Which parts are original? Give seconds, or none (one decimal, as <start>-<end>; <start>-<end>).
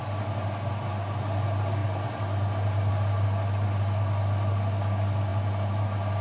0.0-6.2